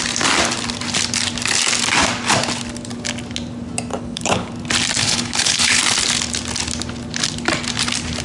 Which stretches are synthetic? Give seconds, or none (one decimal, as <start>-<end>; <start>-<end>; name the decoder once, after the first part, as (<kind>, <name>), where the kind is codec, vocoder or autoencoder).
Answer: 3.9-4.5 (codec, HILCodec); 5.0-5.8